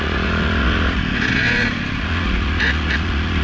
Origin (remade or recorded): remade